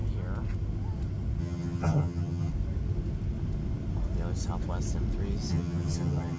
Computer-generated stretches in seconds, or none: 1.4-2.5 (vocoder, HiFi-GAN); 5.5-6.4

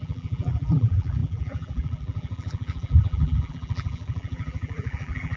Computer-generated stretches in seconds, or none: 0.0-5.4 (vocoder, BigVGAN v2)

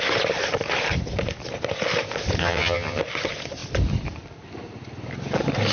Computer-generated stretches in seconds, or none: 2.4-3.0 (vocoder, HiFi-GAN)

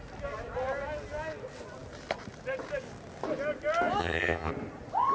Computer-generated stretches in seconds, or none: 4.0-4.5 (vocoder, HiFi-GAN)

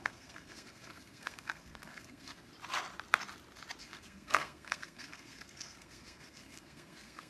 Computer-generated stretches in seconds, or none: 0.0-2.5 (codec, SNAC); 3.8-7.3